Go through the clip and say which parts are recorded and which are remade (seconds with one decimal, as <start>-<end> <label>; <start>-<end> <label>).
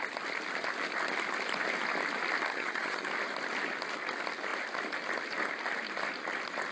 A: 0.0-2.5 recorded; 2.5-3.1 remade; 3.1-6.7 recorded